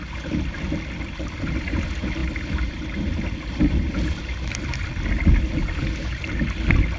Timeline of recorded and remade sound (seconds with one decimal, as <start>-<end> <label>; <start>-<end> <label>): 0.0-7.0 recorded